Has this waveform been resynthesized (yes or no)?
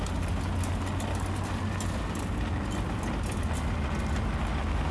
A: no